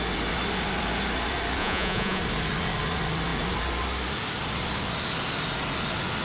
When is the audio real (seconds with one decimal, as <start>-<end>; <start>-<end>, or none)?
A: 0.0-1.6; 2.2-6.2